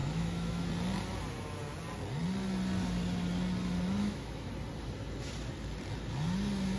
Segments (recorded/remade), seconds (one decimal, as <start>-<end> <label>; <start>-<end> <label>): 0.0-0.7 remade; 0.7-4.0 recorded; 4.0-4.5 remade; 4.5-6.8 recorded